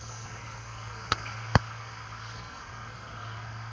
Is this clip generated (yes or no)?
yes